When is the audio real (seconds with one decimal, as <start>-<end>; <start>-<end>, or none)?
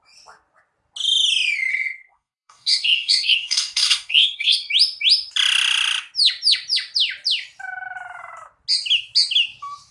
0.0-1.7; 4.7-9.9